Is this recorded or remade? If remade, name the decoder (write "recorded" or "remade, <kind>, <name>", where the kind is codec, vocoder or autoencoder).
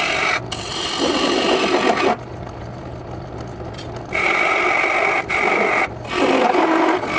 recorded